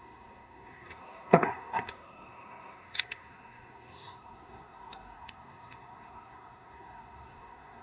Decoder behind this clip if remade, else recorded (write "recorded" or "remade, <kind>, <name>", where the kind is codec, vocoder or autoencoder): remade, codec, SNAC